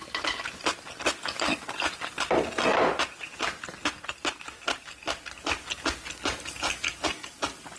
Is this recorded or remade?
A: recorded